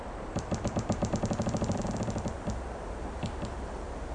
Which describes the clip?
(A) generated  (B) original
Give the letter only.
A